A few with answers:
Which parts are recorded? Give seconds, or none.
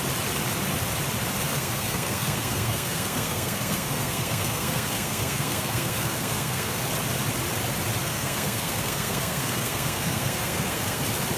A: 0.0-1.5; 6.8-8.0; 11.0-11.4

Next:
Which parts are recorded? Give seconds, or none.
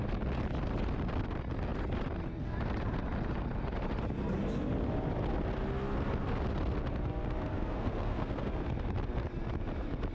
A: 0.0-7.4; 8.5-10.1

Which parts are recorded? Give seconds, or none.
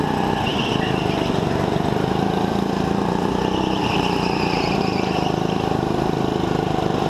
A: 0.0-7.1